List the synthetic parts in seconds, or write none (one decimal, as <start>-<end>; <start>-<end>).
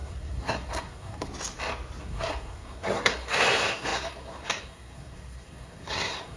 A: 0.0-1.3; 2.0-6.4